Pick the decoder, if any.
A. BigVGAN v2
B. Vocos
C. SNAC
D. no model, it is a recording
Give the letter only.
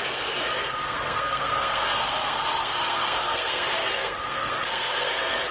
C